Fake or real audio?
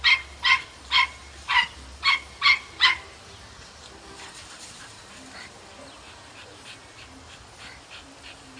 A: real